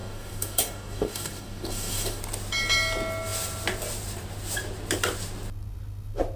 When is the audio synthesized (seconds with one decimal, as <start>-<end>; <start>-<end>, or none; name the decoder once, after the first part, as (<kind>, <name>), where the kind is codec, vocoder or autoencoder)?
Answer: 0.0-2.2 (codec, DAC)